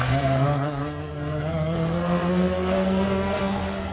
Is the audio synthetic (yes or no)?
yes